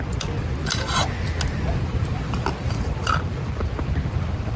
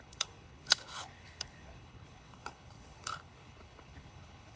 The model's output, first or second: second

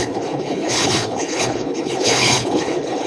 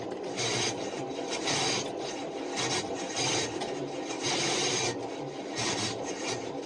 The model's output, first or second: first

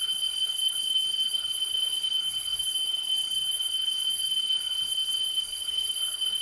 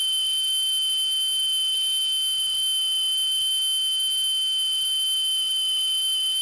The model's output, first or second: first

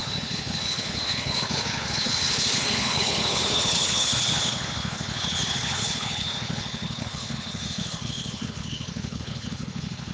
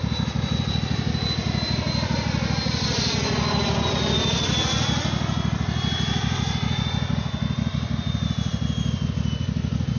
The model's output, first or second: first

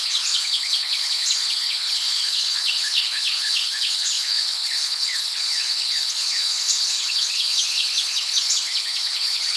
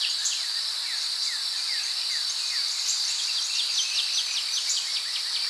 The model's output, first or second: first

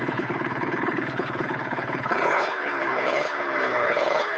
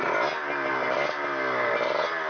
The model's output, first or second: first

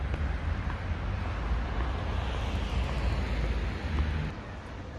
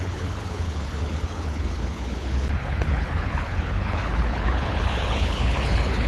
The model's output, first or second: second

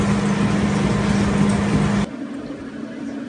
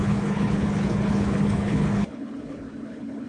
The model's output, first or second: second